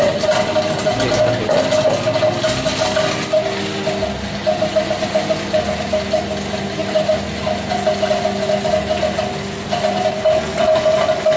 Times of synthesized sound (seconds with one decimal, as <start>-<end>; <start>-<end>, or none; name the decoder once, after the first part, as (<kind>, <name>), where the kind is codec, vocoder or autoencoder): none